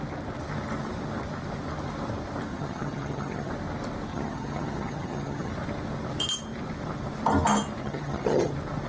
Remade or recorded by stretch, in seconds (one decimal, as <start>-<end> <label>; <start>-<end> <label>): 0.0-2.5 recorded; 2.5-3.5 remade; 3.5-4.1 recorded; 4.1-5.5 remade; 5.5-7.8 recorded; 7.8-8.5 remade; 8.5-8.9 recorded